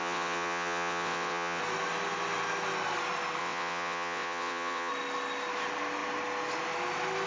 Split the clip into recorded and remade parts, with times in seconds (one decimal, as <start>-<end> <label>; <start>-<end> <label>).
0.0-1.6 remade; 1.6-3.4 recorded; 3.4-4.9 remade; 4.9-7.3 recorded